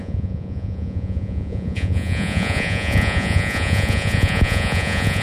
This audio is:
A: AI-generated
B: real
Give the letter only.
A